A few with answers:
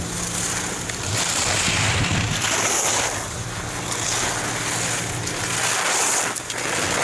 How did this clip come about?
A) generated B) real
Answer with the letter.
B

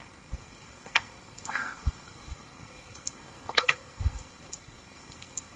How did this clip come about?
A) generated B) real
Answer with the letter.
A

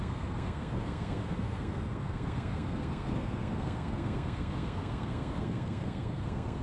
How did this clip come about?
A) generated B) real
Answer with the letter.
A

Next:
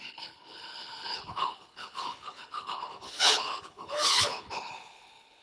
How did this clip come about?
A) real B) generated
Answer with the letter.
B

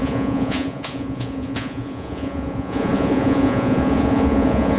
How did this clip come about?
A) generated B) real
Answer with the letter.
A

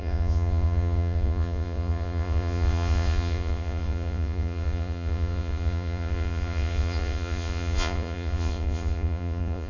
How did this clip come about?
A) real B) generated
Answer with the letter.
B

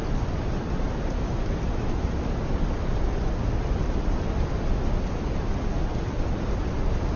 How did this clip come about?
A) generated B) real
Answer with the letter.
B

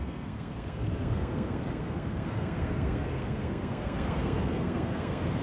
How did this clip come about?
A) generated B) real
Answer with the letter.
A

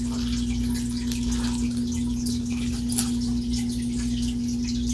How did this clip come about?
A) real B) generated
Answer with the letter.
A